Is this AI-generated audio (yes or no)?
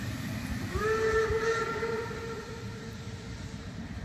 yes